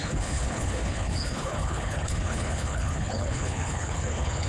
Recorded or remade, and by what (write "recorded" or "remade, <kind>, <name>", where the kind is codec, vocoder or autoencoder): remade, codec, HILCodec